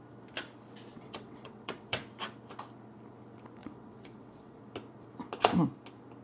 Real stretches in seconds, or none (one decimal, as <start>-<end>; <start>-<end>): 0.0-0.9; 2.0-3.6; 4.6-6.2